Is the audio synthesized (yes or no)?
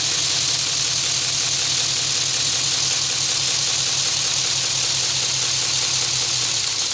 no